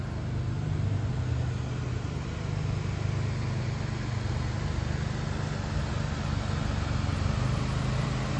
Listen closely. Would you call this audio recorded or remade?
recorded